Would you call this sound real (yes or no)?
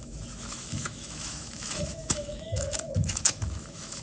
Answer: no